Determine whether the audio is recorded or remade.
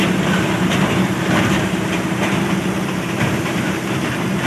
remade